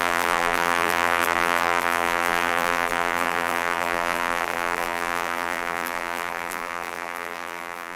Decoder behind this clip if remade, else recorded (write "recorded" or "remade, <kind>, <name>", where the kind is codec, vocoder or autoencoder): remade, vocoder, BigVGAN v2